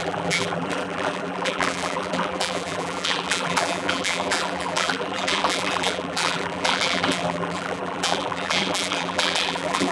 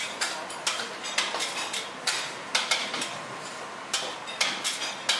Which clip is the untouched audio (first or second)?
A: second